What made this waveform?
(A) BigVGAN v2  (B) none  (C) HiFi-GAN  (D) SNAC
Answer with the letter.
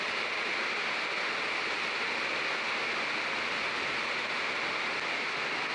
B